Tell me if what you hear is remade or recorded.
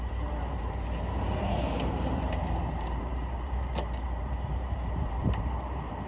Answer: remade